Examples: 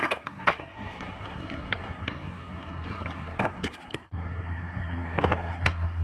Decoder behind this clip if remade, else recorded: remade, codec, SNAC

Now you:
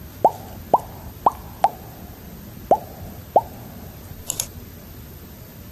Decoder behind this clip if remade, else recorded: recorded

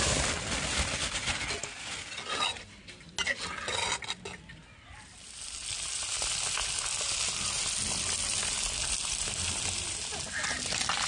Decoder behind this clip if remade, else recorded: recorded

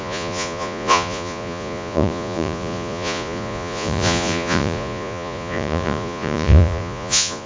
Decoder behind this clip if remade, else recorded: remade, vocoder, Vocos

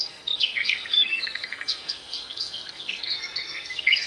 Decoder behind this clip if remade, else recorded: remade, codec, SNAC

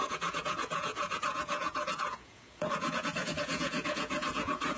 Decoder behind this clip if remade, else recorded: remade, vocoder, Vocos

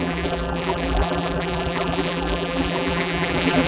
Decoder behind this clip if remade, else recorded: remade, vocoder, BigVGAN v2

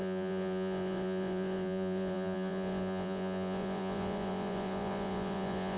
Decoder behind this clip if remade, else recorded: remade, vocoder, Vocos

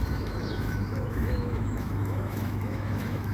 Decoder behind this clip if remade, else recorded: remade, autoencoder, DAC-VAE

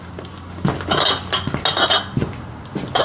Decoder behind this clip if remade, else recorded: recorded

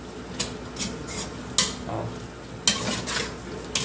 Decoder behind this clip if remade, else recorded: recorded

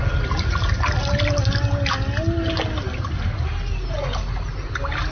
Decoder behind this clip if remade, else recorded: recorded